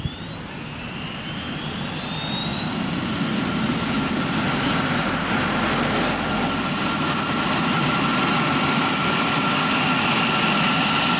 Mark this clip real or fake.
real